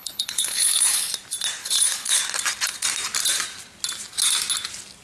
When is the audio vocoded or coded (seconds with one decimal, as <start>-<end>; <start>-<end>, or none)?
0.0-1.1; 1.6-2.2